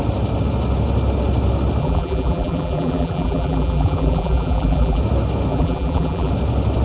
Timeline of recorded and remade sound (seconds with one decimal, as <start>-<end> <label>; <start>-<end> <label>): 0.0-1.8 recorded; 1.8-5.0 remade; 5.0-5.5 recorded; 5.5-6.3 remade; 6.3-6.8 recorded